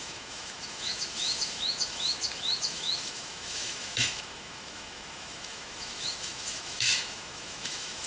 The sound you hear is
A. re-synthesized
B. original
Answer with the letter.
A